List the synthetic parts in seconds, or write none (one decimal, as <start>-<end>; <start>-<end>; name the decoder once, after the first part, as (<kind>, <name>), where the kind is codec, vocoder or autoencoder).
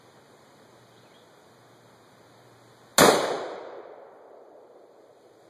none